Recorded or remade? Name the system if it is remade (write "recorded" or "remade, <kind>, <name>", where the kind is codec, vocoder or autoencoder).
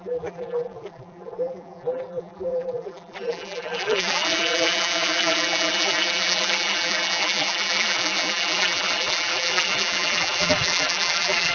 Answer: remade, vocoder, BigVGAN v2